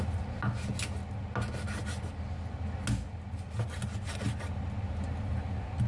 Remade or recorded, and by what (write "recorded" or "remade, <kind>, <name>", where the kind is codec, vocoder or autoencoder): recorded